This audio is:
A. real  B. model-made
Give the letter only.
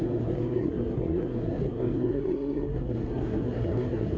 B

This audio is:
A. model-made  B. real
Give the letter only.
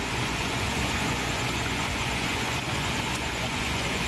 A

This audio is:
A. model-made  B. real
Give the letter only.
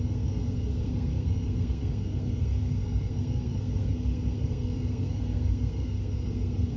A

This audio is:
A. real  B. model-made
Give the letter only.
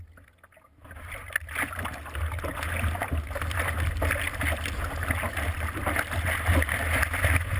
A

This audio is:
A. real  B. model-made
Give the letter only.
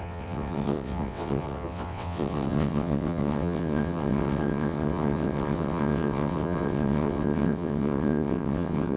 B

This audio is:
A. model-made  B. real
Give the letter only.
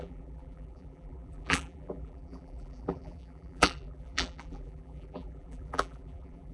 A